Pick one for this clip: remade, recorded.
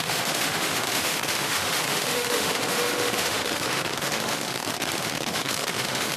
remade